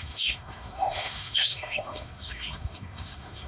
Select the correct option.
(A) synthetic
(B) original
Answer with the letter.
A